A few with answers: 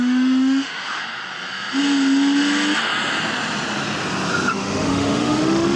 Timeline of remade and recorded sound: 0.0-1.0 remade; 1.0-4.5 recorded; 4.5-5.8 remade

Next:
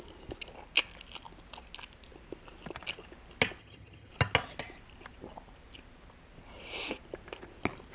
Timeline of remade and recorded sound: 0.0-3.6 recorded; 3.6-4.1 remade; 4.1-7.9 recorded

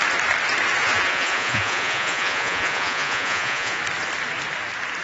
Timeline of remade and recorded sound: 0.0-0.8 recorded; 0.8-3.8 remade; 3.8-5.0 recorded

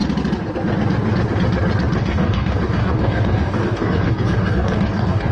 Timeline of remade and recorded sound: 0.0-2.0 recorded; 2.0-5.3 remade